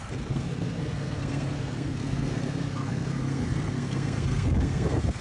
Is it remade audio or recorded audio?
remade